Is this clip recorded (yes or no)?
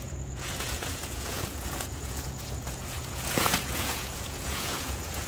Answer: no